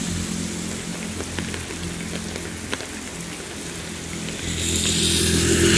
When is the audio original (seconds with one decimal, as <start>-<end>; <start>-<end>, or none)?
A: 0.0-5.8